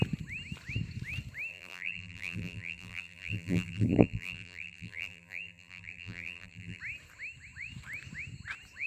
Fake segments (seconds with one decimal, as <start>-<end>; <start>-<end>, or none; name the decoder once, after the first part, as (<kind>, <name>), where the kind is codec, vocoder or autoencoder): 1.5-6.8 (vocoder, BigVGAN v2)